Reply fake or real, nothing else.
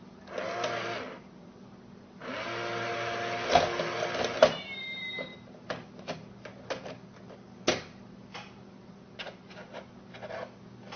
real